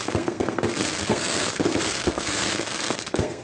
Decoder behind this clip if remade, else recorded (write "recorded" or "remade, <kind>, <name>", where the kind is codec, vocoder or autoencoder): remade, codec, SNAC